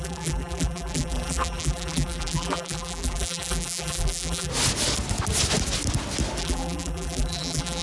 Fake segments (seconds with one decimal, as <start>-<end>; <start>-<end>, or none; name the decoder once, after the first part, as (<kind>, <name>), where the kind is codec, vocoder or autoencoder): 0.0-4.5 (vocoder, BigVGAN v2); 6.4-7.8